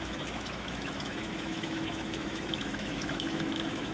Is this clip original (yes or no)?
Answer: no